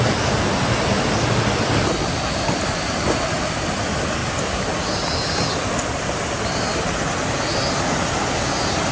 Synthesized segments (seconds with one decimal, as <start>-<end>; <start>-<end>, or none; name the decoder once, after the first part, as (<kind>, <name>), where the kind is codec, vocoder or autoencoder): none